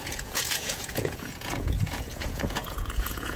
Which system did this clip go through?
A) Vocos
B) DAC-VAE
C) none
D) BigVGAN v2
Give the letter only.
A